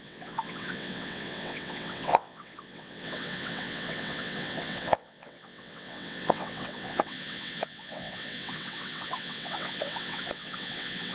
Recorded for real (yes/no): no